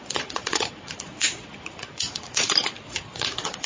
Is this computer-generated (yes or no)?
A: yes